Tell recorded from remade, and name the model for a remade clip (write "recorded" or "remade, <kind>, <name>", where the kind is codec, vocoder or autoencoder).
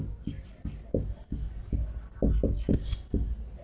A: recorded